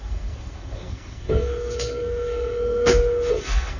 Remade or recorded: remade